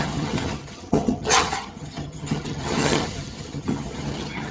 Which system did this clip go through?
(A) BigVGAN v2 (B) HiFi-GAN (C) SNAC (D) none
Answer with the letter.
B